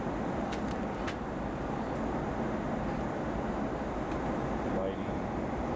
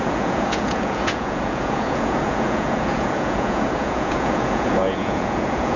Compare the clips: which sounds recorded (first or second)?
first